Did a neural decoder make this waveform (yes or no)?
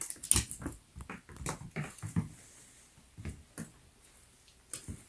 no